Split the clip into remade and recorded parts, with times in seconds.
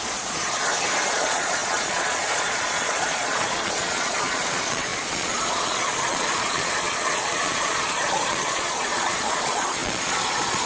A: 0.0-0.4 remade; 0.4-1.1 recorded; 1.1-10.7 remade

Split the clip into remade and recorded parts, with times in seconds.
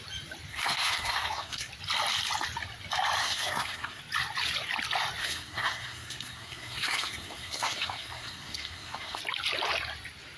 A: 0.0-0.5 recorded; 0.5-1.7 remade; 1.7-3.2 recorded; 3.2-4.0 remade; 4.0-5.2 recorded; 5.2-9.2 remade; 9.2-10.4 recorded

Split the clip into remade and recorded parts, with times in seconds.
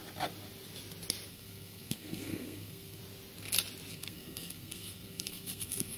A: 0.0-1.3 recorded; 1.3-3.0 remade; 3.0-3.9 recorded; 3.9-6.0 remade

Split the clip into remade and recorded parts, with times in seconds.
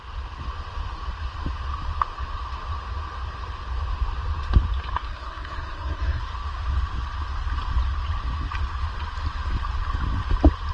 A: 0.0-5.1 recorded; 5.1-6.2 remade; 6.2-10.7 recorded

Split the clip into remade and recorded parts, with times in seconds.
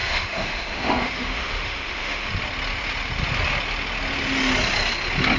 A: 0.0-2.3 remade; 2.3-5.4 recorded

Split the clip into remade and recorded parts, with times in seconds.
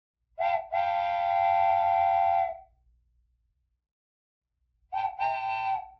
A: 0.0-1.7 recorded; 1.7-2.7 remade; 2.7-3.4 recorded; 3.4-5.2 remade; 5.2-6.0 recorded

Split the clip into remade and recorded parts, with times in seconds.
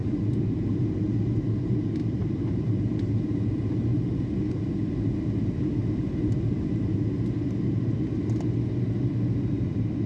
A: 0.0-0.8 remade; 0.8-2.0 recorded; 2.0-3.4 remade; 3.4-10.1 recorded